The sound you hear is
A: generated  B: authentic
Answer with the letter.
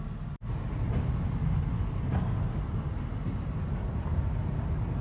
B